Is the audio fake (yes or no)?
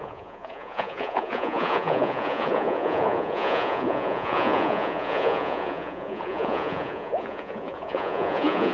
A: yes